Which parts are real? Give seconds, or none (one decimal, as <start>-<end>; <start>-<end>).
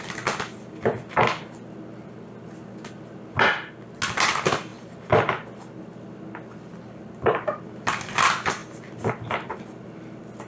0.0-10.5